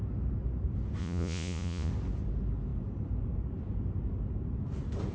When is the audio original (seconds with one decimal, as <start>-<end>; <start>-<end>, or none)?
0.0-1.0; 1.9-5.1